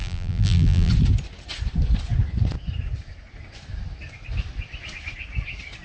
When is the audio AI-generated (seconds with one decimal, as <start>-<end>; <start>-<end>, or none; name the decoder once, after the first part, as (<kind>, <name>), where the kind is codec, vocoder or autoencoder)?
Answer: 0.0-0.9 (vocoder, BigVGAN v2)